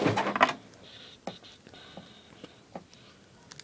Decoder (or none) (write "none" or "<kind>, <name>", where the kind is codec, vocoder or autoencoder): none